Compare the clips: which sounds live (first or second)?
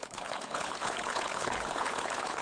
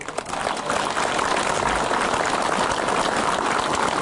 second